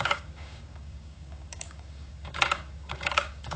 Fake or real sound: fake